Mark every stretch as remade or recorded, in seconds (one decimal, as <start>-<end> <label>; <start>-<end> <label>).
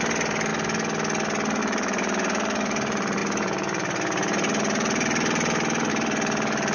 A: 0.0-0.5 remade; 0.5-1.6 recorded; 1.6-6.7 remade